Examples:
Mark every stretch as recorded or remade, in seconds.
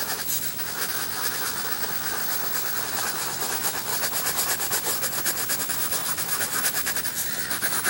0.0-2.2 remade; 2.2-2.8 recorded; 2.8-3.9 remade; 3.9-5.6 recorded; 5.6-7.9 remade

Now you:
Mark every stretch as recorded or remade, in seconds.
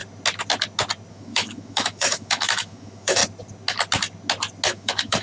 0.0-1.1 recorded; 1.1-3.2 remade; 3.2-4.7 recorded; 4.7-5.2 remade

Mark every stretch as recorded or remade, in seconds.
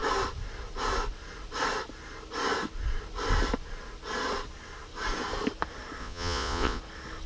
0.0-6.0 recorded; 6.0-6.8 remade; 6.8-7.3 recorded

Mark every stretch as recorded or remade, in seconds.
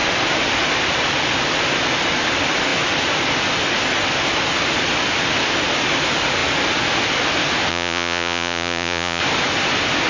0.0-7.7 recorded; 7.7-9.2 remade; 9.2-10.1 recorded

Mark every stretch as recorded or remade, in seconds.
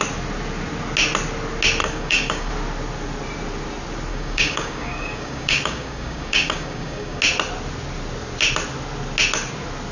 0.0-1.8 recorded; 1.8-2.5 remade; 2.5-4.1 recorded; 4.1-7.2 remade; 7.2-9.9 recorded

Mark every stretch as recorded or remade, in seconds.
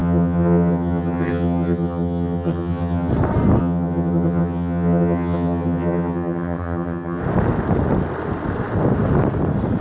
0.0-3.1 remade; 3.1-3.6 recorded; 3.6-7.2 remade; 7.2-9.8 recorded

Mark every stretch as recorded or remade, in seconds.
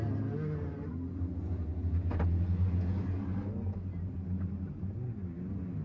0.0-5.8 recorded